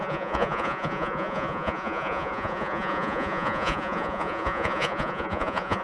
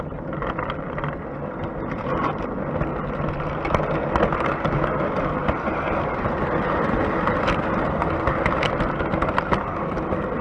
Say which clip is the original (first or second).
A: second